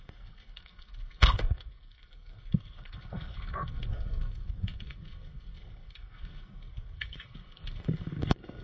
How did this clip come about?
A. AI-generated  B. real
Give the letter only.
A